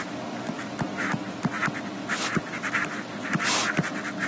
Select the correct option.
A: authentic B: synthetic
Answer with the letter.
A